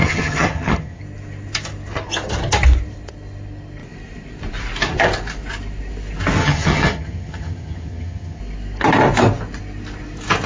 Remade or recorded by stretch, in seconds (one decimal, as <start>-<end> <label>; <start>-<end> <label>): 0.0-1.0 remade; 1.0-6.4 recorded; 6.4-8.4 remade; 8.4-10.5 recorded